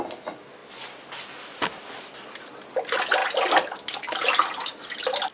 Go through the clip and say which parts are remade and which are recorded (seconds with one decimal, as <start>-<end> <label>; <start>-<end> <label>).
0.0-5.3 recorded